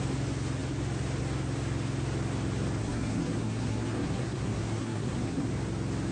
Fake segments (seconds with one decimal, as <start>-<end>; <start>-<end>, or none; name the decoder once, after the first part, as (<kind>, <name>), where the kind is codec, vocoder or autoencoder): 2.8-5.5 (codec, SNAC)